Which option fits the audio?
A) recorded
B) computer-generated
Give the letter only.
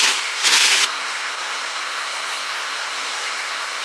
B